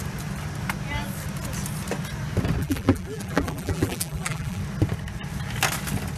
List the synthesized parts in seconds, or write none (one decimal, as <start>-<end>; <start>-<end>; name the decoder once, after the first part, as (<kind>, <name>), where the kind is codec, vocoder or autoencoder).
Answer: 2.6-4.6 (vocoder, BigVGAN v2)